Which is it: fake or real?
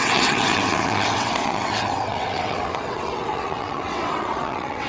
fake